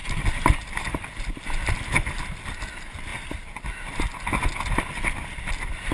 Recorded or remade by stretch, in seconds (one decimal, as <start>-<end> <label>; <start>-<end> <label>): 0.0-5.9 recorded